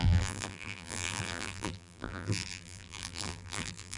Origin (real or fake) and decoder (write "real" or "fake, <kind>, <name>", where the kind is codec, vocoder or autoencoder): fake, vocoder, BigVGAN v2